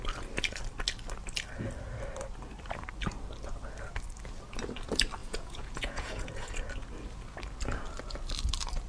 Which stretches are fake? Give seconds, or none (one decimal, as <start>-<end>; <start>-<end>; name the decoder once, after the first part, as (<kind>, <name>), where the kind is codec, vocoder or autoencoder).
5.2-6.3 (vocoder, Vocos)